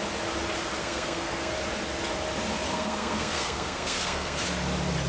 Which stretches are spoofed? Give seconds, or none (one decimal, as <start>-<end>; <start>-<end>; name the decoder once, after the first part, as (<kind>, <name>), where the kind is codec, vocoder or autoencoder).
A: 0.8-1.5 (codec, SNAC); 2.7-4.4

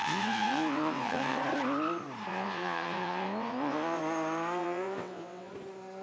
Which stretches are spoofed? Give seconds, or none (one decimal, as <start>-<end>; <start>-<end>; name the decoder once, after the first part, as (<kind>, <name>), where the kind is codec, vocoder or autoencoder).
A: 0.0-1.4 (vocoder, WaveNeXt); 2.3-4.0; 4.6-5.5